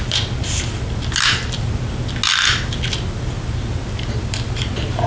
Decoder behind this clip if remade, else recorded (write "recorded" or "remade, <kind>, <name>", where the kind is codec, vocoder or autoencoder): recorded